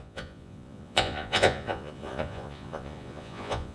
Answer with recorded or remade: remade